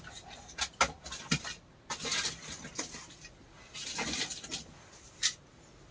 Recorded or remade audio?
recorded